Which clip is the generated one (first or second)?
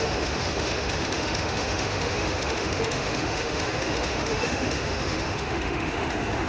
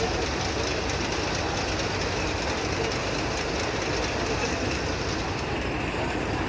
first